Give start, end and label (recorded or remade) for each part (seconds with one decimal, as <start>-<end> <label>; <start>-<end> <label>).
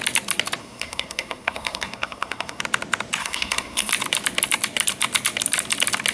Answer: 0.0-0.6 recorded; 0.6-2.6 remade; 2.6-3.2 recorded; 3.2-3.9 remade; 3.9-6.1 recorded